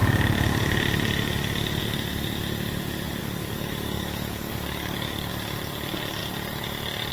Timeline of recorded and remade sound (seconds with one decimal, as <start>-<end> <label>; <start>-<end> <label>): 0.0-3.2 recorded; 3.2-5.3 remade; 5.3-7.1 recorded